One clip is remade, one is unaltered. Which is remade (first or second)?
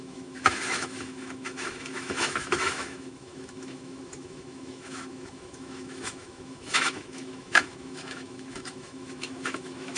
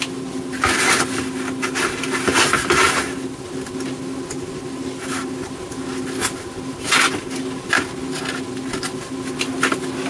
first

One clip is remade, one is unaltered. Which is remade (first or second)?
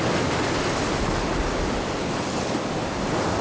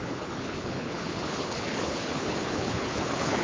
second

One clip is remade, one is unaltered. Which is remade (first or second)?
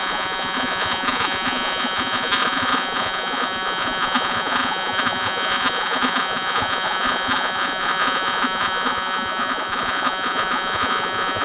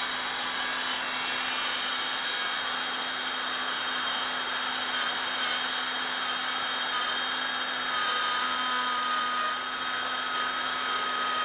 first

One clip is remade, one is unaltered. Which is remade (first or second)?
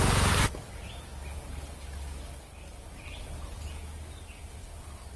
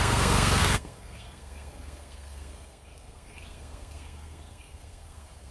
second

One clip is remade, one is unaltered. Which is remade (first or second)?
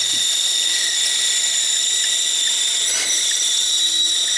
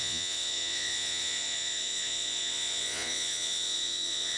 second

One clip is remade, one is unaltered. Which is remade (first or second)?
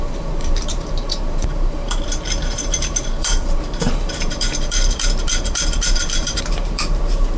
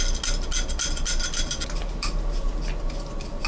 first